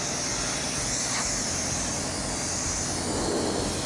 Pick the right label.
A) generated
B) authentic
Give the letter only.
B